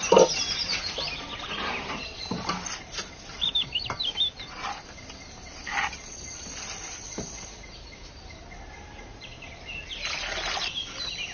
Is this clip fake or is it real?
real